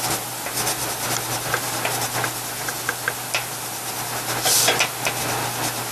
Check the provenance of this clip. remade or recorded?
recorded